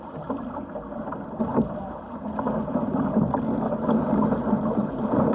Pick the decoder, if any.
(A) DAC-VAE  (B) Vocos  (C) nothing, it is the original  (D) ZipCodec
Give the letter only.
C